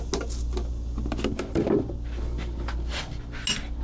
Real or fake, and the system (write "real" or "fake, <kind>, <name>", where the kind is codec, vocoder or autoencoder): real